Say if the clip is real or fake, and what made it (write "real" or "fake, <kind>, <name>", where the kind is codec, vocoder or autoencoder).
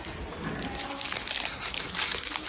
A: real